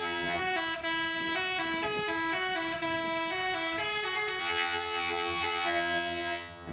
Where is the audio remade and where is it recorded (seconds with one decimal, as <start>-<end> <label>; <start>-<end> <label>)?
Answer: 0.0-0.4 remade; 0.4-4.4 recorded; 4.4-6.7 remade